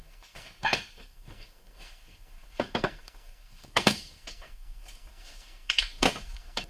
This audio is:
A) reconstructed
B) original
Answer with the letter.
A